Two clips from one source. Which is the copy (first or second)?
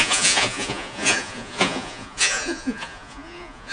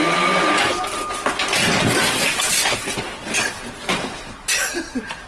first